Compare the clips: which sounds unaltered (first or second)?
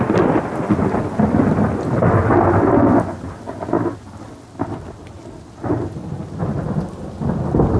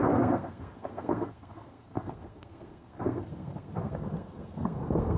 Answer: first